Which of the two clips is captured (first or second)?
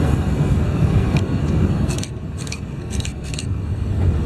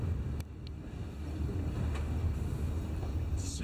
second